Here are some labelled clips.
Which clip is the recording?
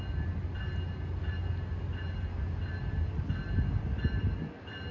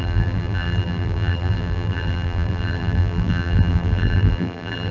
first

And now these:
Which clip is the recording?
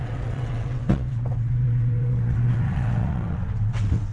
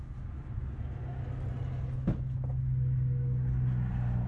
second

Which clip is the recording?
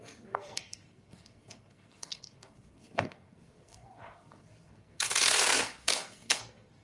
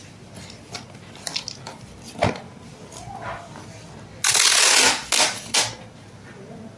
second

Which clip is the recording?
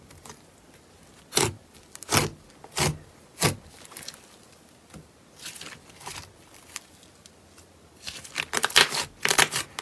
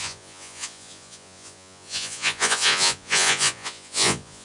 first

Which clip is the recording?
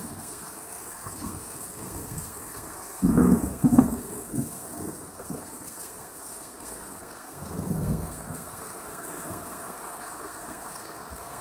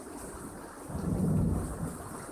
second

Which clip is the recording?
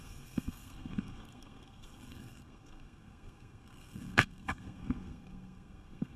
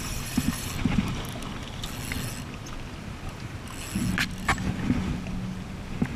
second